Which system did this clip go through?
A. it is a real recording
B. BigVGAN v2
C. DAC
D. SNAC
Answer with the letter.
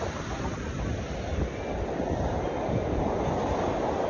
A